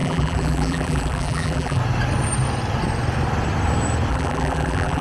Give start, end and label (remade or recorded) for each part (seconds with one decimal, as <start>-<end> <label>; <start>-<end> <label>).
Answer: 0.0-1.8 remade; 1.8-4.1 recorded; 4.1-5.0 remade